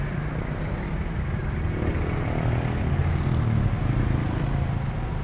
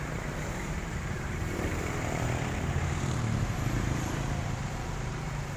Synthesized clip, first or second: second